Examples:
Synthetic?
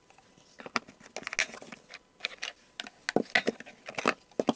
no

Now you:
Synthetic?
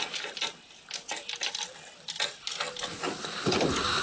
no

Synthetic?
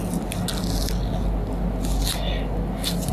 no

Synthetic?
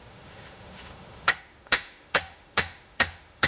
yes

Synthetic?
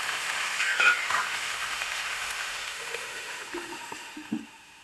yes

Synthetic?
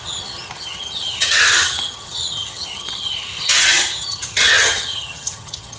yes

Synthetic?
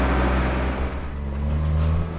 no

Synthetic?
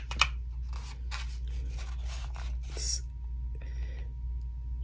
no